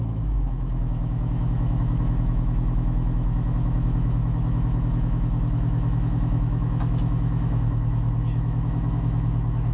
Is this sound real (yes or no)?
no